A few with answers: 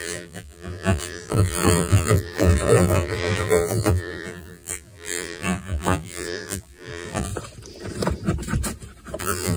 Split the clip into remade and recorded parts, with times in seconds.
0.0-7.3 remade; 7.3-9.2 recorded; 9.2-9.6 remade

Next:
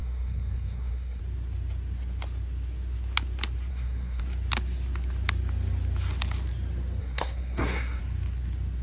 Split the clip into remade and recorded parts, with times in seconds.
0.0-1.2 remade; 1.2-3.7 recorded; 3.7-4.2 remade; 4.2-7.0 recorded; 7.0-8.0 remade; 8.0-8.8 recorded

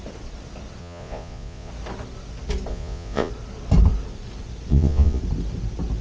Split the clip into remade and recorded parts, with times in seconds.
0.0-0.8 recorded; 0.8-1.7 remade; 1.7-2.7 recorded; 2.7-3.3 remade; 3.3-4.7 recorded; 4.7-5.2 remade; 5.2-6.0 recorded

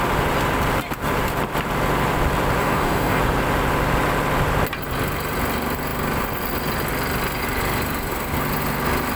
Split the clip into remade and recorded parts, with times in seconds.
0.0-2.6 recorded; 2.6-3.2 remade; 3.2-9.2 recorded

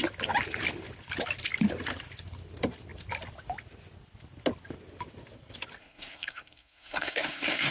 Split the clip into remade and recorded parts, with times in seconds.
0.0-5.8 recorded; 5.8-7.7 remade

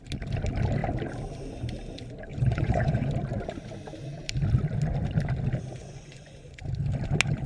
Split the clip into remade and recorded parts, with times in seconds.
0.0-2.3 recorded; 2.3-3.1 remade; 3.1-5.8 recorded; 5.8-6.6 remade; 6.6-7.5 recorded

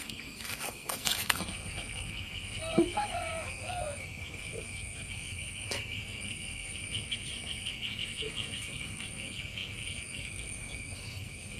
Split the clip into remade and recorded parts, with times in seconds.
0.0-11.6 remade